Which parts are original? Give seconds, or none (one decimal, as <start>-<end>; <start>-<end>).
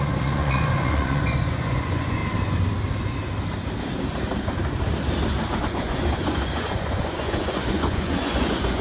2.2-5.6